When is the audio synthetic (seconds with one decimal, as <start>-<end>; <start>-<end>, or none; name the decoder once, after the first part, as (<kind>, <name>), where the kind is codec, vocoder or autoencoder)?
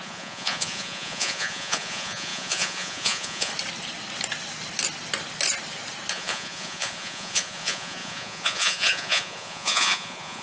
0.0-3.5 (vocoder, Vocos); 6.1-10.4